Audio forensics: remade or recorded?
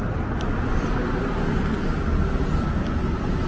recorded